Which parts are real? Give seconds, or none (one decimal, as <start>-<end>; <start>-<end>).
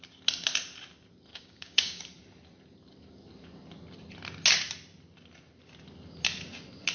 0.0-1.3; 2.0-6.9